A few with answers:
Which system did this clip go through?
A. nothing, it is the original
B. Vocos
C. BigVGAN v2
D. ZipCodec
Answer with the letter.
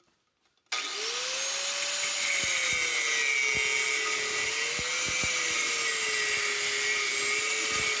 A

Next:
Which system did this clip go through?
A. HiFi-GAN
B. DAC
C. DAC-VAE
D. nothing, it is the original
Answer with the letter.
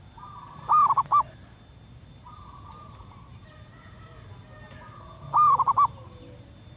D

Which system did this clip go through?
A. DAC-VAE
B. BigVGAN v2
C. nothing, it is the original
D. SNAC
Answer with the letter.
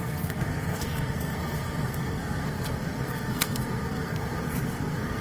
D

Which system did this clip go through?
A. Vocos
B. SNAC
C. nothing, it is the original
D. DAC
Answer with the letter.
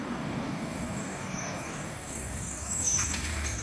D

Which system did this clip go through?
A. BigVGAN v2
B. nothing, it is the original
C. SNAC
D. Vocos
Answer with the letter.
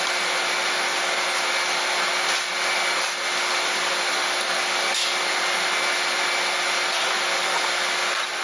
B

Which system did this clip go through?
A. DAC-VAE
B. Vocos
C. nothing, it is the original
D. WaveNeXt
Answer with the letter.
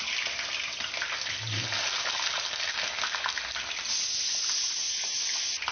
C